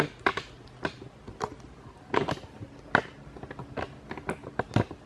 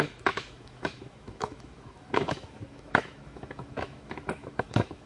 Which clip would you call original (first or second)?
first